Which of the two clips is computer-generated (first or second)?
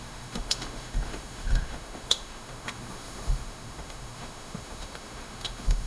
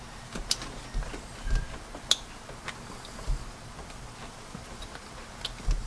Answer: first